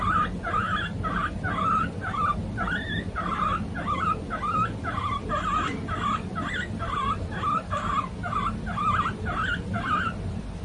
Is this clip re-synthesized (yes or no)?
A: no